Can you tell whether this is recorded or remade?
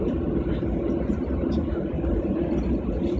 recorded